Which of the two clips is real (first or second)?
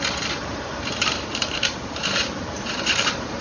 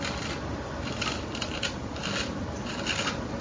second